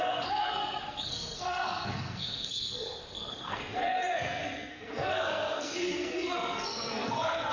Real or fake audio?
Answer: fake